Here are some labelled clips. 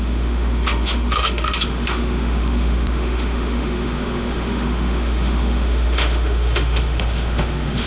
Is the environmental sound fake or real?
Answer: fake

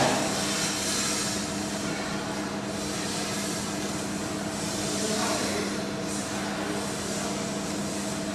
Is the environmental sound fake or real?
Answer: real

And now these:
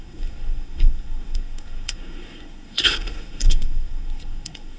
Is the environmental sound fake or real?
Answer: fake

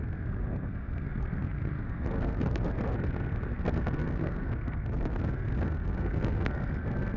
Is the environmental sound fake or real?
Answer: fake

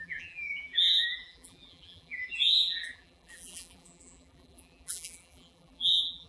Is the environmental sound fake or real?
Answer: fake